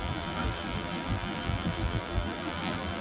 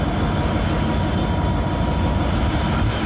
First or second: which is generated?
first